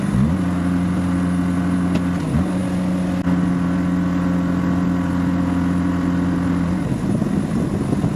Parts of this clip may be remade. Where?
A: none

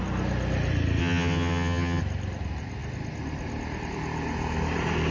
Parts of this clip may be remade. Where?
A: 1.0-2.0 (vocoder, HiFi-GAN)

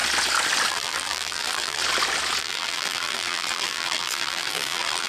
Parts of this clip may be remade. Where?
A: 0.7-1.8 (vocoder, BigVGAN v2); 2.4-5.1

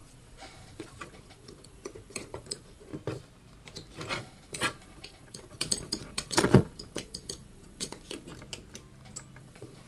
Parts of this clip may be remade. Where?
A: 0.0-2.9 (vocoder, Vocos); 4.1-8.3; 9.4-9.9